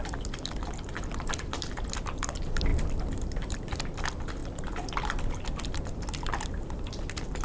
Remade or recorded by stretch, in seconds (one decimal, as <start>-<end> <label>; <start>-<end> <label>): 0.0-2.7 recorded; 2.7-3.8 remade; 3.8-4.4 recorded; 4.4-5.4 remade; 5.4-7.4 recorded